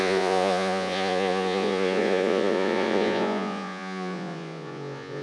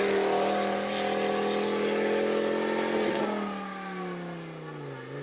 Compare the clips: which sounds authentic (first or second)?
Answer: second